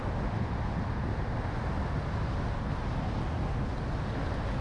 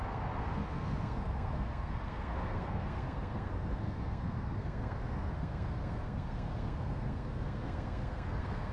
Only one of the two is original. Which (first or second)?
first